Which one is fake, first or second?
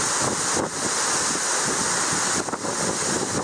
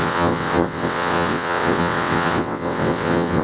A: second